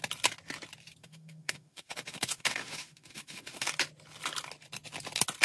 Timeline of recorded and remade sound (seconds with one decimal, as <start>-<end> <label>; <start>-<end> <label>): 0.0-1.0 recorded; 1.0-3.7 remade; 3.7-5.4 recorded